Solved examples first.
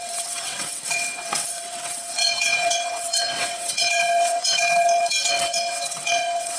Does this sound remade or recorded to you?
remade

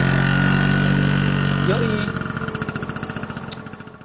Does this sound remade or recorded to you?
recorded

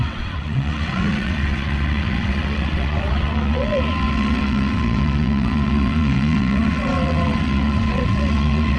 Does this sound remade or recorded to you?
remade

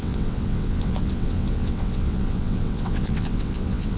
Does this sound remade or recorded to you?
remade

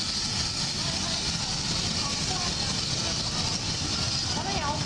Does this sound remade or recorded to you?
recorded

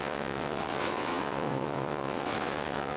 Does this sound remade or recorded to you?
remade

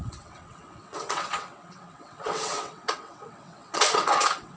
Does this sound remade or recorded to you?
remade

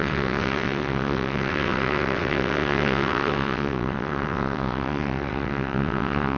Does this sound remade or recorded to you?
remade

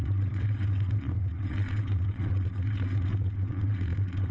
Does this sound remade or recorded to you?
remade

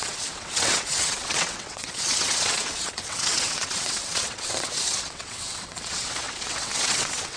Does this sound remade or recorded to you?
remade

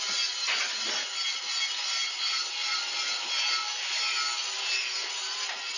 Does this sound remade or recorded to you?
recorded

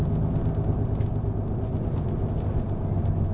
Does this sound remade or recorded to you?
recorded